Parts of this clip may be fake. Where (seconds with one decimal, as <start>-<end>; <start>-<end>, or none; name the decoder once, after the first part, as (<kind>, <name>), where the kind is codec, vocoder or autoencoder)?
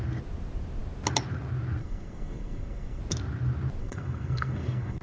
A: 1.8-3.0 (codec, SNAC); 3.8-5.0